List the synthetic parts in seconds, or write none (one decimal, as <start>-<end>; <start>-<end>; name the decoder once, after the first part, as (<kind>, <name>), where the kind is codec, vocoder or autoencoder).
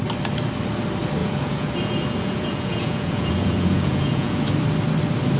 1.2-4.4 (vocoder, Vocos)